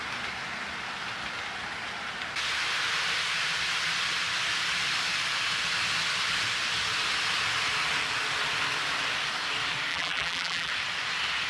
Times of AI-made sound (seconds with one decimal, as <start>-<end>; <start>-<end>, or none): 9.9-10.7